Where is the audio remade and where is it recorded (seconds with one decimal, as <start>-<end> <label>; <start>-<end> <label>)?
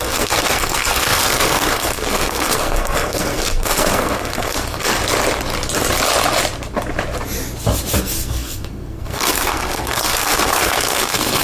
0.0-5.0 remade; 5.0-8.0 recorded; 8.0-11.4 remade